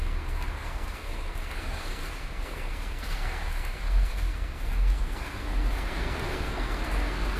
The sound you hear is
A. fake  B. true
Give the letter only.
A